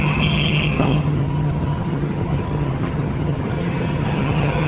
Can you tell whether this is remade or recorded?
remade